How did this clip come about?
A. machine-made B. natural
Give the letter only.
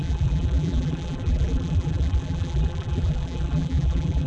A